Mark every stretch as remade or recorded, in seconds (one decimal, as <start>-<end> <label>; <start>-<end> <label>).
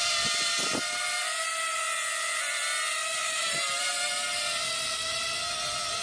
0.0-3.1 recorded; 3.1-3.9 remade; 3.9-6.0 recorded